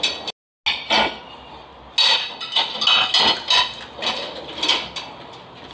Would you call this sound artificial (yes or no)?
no